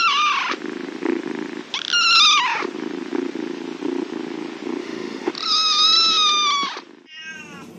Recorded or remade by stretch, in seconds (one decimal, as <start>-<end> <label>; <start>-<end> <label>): 0.0-4.8 recorded; 4.8-5.3 remade; 5.3-7.8 recorded